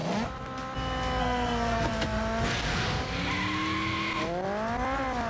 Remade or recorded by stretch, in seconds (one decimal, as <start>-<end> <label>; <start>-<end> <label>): 0.0-1.2 recorded; 1.2-1.9 remade; 1.9-5.3 recorded